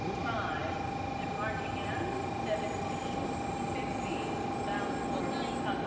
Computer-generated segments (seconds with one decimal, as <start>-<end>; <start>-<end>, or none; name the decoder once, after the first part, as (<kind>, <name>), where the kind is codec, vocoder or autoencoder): 4.1-4.8 (vocoder, BigVGAN v2)